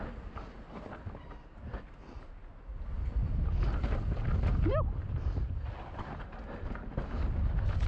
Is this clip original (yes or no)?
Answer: yes